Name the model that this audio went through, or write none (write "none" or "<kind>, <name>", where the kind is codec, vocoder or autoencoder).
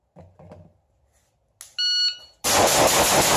none